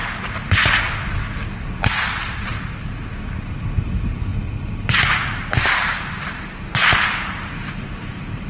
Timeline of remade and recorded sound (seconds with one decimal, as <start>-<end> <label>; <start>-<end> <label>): 0.0-2.1 recorded; 2.1-4.3 remade; 4.3-5.2 recorded; 5.2-8.5 remade